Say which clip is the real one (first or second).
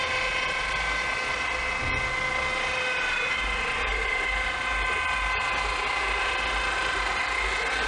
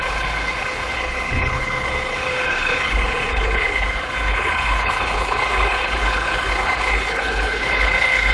first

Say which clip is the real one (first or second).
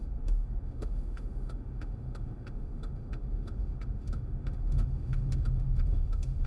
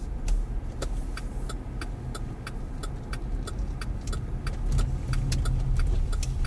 second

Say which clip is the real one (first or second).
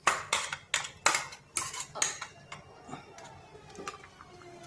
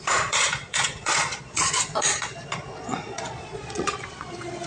first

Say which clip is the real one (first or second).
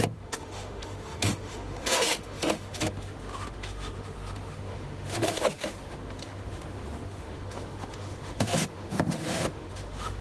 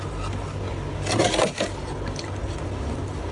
second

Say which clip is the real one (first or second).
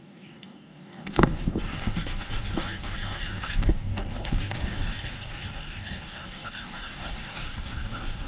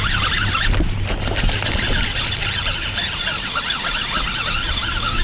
second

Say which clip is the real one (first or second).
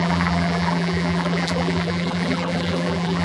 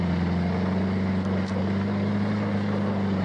second